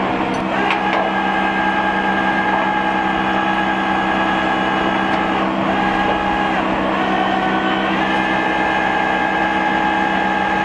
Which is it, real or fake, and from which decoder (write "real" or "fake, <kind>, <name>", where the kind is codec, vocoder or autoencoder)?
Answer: real